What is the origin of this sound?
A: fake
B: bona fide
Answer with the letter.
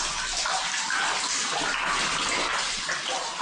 B